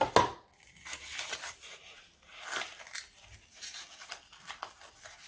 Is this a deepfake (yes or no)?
no